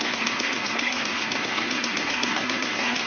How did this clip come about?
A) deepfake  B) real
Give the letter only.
A